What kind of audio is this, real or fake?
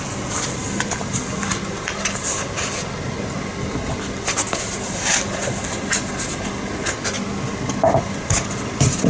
real